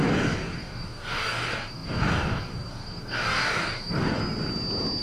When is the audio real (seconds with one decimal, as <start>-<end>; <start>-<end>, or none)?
4.2-5.0